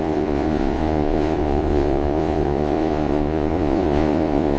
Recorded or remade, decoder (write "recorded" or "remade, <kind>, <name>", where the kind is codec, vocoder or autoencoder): remade, vocoder, Vocos